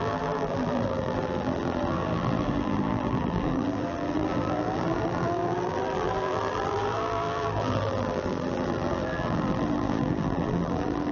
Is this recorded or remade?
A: remade